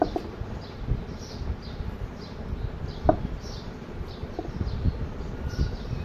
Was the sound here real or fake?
fake